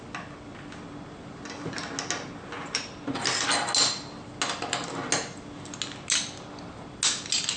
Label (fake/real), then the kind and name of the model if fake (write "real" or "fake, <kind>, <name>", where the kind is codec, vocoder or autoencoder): real